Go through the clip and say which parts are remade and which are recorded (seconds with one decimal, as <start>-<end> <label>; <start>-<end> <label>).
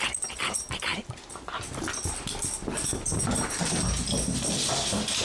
0.0-5.2 recorded